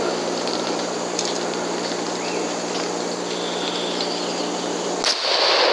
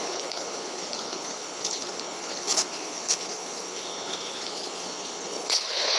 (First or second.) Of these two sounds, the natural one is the first